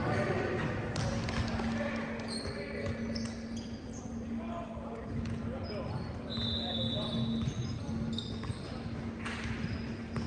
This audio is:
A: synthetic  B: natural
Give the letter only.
B